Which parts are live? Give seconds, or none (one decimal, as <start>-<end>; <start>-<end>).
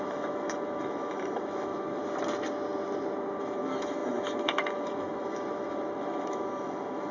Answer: 2.0-3.4